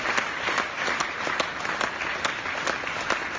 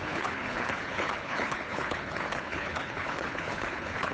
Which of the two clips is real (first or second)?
first